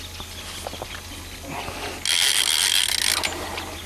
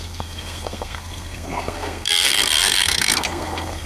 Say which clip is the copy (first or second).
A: second